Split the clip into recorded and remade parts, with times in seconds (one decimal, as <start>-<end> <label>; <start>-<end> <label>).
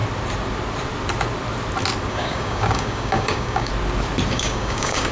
0.0-2.1 recorded; 2.1-3.7 remade; 3.7-4.3 recorded; 4.3-5.1 remade